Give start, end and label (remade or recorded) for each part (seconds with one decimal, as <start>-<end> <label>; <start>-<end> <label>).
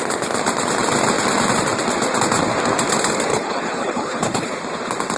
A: 0.0-3.3 recorded; 3.3-4.5 remade; 4.5-5.2 recorded